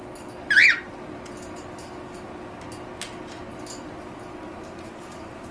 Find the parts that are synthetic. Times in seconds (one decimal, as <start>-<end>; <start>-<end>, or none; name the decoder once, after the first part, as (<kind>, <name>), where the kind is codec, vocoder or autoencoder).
none